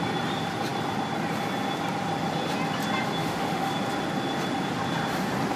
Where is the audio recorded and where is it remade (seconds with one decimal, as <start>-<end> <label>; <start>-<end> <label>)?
0.0-3.2 recorded; 3.2-3.7 remade; 3.7-5.6 recorded